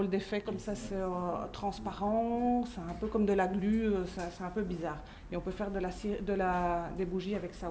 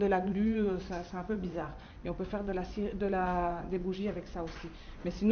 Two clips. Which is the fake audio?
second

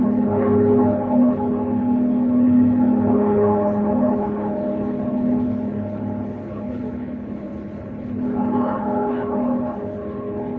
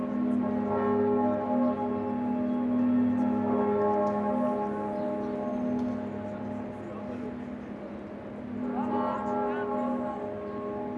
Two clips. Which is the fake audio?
first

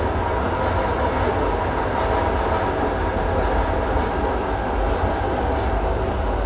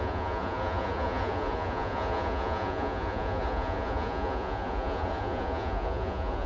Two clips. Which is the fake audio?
second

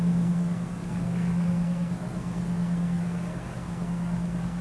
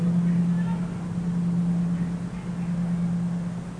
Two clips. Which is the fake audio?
first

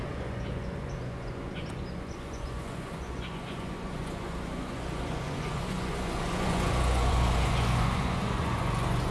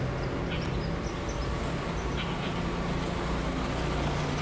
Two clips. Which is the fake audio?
first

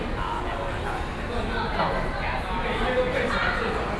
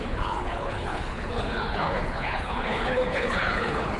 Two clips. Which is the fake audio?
second